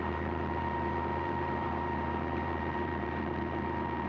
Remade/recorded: remade